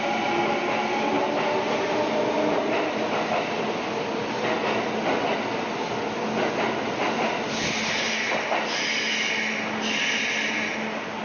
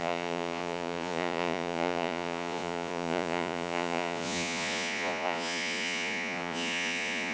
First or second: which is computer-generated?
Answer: second